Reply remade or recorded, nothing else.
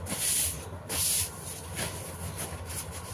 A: recorded